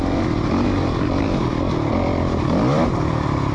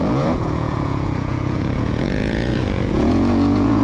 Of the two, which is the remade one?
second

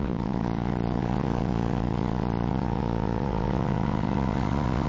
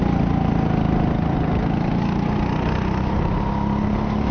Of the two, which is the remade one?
first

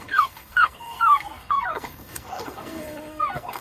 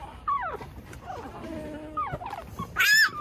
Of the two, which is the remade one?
first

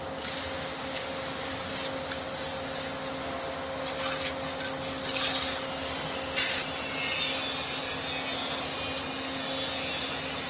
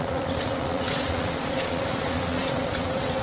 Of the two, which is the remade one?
second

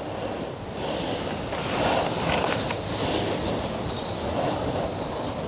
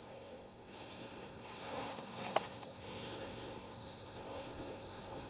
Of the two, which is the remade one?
second